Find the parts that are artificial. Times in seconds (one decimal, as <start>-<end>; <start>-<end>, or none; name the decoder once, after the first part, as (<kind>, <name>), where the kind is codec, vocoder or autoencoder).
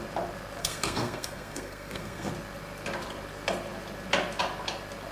0.6-2.3 (codec, SNAC)